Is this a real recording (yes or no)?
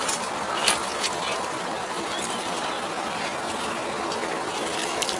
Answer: no